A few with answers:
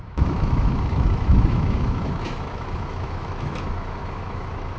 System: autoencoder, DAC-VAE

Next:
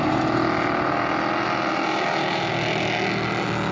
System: none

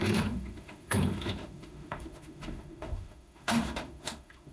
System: autoencoder, DAC-VAE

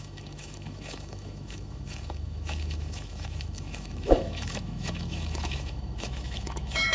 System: autoencoder, DAC-VAE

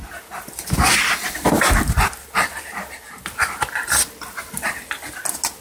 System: none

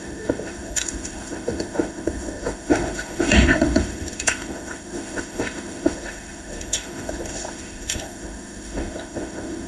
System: autoencoder, DAC-VAE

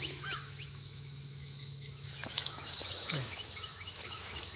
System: autoencoder, DAC-VAE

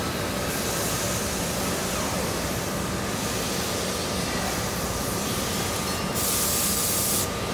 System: none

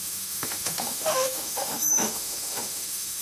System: autoencoder, DAC-VAE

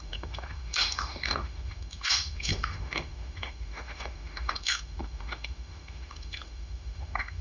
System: autoencoder, DAC-VAE